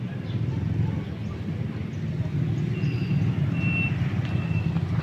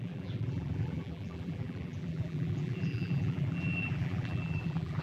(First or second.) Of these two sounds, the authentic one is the first